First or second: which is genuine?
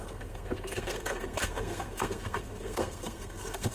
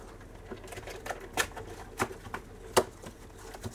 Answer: second